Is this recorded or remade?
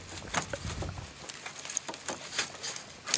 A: recorded